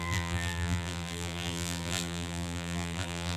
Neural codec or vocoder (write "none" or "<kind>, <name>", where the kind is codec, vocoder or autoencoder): vocoder, BigVGAN v2